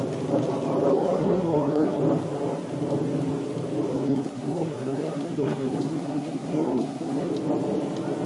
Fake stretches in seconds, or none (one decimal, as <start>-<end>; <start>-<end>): 0.9-2.0; 3.9-7.3